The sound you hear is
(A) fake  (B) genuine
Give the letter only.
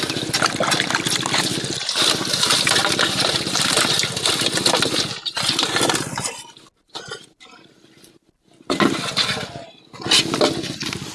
B